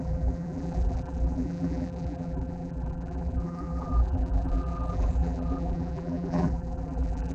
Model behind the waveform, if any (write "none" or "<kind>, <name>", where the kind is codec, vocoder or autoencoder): vocoder, BigVGAN v2